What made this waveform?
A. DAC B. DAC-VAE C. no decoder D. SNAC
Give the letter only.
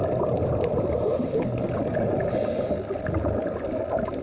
C